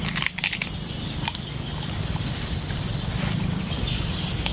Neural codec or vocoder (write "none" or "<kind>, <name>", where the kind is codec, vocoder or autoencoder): none